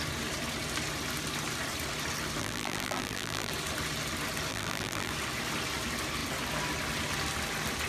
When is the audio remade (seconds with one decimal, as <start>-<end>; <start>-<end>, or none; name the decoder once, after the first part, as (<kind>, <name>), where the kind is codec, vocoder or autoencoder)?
2.4-3.5 (vocoder, BigVGAN v2); 4.5-5.1

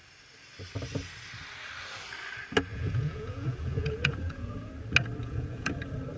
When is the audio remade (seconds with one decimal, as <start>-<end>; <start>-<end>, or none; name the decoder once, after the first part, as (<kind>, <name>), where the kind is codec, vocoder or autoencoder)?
2.7-4.7 (vocoder, Vocos); 5.2-5.7

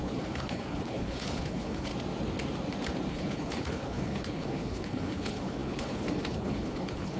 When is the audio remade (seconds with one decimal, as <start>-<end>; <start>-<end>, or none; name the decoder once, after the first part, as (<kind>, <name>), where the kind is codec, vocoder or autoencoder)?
0.0-1.9 (codec, HILCodec); 3.1-7.2

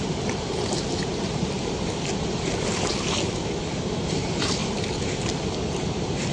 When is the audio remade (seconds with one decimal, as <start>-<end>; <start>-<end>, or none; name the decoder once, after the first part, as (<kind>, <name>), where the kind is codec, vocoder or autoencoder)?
0.0-6.3 (vocoder, BigVGAN v2)

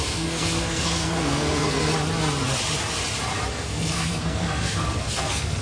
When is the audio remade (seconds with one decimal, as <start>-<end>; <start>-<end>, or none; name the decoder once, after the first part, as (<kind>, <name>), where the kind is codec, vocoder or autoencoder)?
0.0-1.9 (codec, SNAC); 3.5-5.6

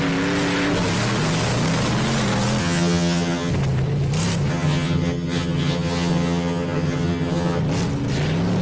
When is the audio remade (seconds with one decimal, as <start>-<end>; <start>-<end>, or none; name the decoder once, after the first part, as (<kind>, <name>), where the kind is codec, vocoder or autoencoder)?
2.6-3.5 (vocoder, HiFi-GAN); 4.5-7.6